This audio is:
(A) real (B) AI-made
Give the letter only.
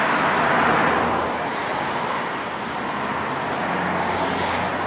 A